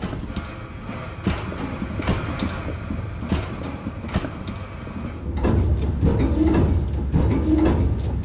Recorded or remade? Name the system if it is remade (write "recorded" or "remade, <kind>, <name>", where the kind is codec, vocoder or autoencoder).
recorded